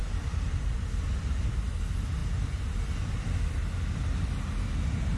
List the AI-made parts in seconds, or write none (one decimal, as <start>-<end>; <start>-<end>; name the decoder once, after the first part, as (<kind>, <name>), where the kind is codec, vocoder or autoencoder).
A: 0.0-1.5 (vocoder, BigVGAN v2)